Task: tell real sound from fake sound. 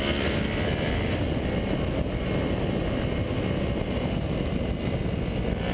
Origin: real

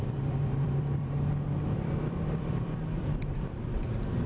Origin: fake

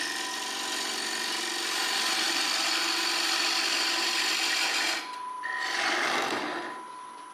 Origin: fake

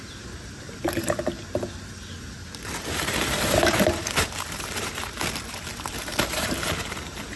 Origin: fake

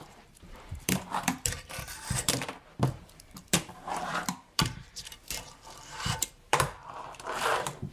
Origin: fake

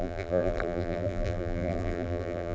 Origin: fake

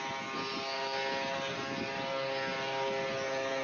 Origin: real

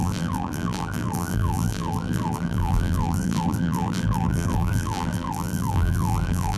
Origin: fake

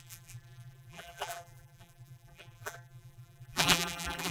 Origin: fake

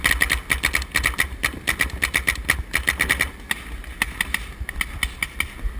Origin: real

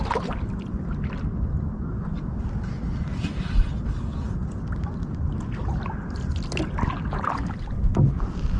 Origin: real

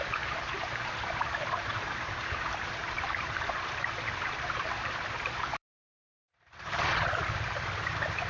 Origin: fake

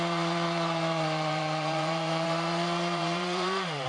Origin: fake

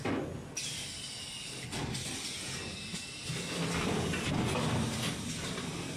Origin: real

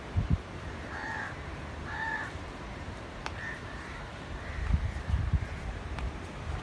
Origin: fake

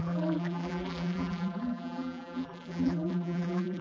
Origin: fake